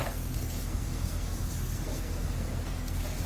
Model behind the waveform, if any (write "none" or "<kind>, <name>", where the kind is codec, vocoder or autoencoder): codec, SNAC